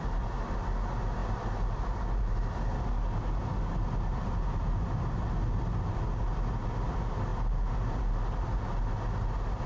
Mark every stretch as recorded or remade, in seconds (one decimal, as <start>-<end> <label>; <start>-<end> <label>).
0.0-9.7 recorded